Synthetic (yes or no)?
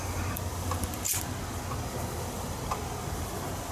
no